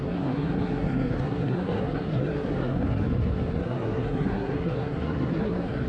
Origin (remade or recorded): remade